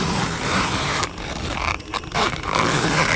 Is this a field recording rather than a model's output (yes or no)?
no